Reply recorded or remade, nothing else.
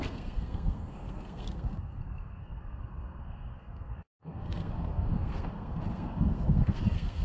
remade